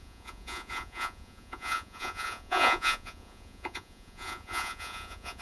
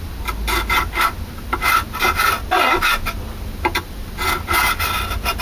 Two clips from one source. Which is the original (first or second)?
second